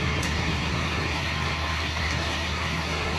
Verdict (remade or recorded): remade